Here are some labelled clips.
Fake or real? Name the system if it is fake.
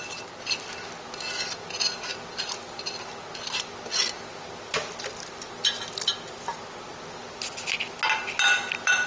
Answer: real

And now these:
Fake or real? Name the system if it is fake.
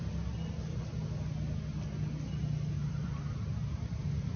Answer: real